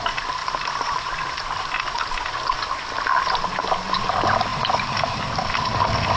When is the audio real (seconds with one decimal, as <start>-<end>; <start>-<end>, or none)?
0.0-0.4; 1.4-4.5; 5.3-6.2